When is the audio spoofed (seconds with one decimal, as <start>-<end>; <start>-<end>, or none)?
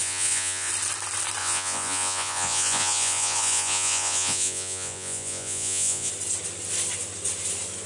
0.0-0.7; 1.4-6.1